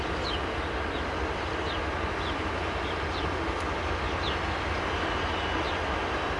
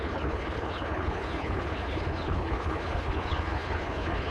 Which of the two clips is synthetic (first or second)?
second